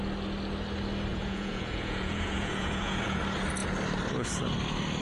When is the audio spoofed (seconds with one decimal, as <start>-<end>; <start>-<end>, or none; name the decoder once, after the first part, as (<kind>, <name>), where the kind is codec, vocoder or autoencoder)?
1.1-3.2 (vocoder, Vocos)